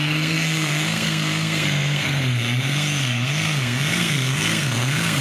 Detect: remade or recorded remade